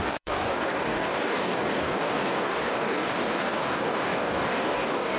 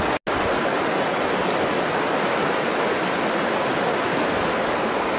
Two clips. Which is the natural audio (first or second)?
second